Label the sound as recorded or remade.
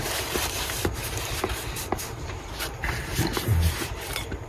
remade